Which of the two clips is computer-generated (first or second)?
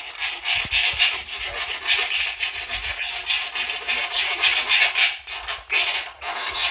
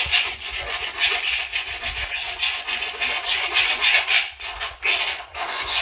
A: second